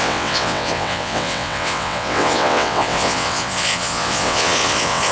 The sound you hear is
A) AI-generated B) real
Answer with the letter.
A